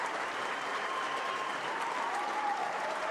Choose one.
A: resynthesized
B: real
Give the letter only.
A